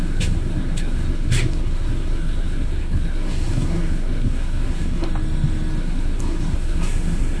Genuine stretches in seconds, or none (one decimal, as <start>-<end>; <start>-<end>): 5.1-5.8